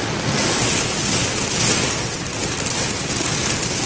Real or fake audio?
real